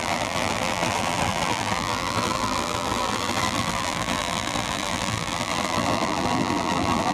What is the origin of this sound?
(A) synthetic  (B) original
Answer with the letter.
A